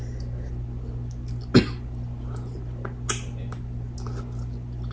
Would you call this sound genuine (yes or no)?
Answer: yes